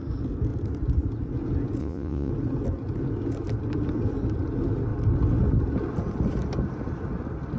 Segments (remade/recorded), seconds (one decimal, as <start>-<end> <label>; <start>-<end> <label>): 0.0-1.8 recorded; 1.8-2.3 remade; 2.3-7.6 recorded